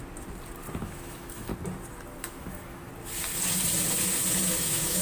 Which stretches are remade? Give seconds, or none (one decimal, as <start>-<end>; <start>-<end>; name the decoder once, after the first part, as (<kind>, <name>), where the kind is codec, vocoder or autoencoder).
0.8-1.5 (autoencoder, DAC-VAE); 2.2-2.9; 4.4-5.0